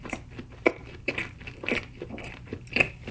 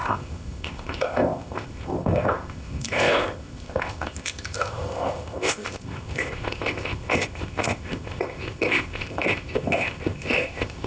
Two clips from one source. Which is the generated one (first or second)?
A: second